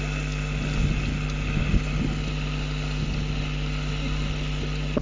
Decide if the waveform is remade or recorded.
recorded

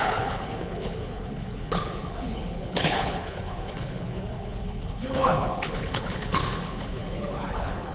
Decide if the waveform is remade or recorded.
remade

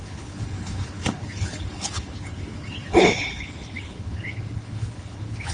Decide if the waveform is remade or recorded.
remade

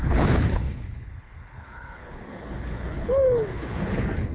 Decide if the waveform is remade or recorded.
remade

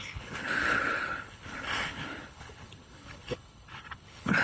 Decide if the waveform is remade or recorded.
remade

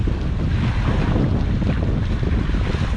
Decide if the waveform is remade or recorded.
recorded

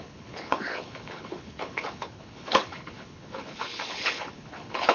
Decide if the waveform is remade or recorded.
remade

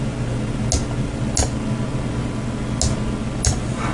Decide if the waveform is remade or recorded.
recorded